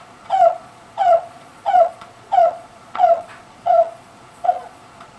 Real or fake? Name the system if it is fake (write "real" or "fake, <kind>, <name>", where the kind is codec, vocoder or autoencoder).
fake, vocoder, Vocos